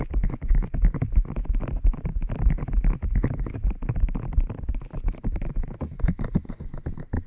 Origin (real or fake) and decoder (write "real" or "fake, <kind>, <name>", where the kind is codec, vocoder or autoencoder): real